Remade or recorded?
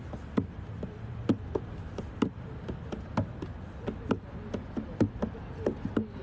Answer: recorded